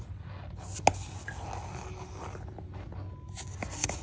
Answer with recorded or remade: recorded